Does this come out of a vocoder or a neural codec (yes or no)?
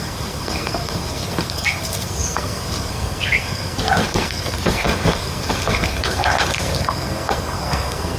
yes